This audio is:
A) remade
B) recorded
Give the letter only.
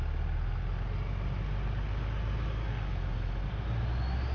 B